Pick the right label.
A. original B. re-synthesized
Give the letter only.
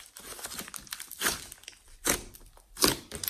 A